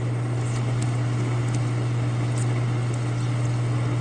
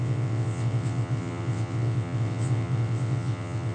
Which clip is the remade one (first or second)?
second